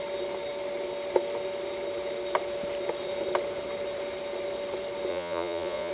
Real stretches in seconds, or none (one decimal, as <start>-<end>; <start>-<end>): 0.0-5.1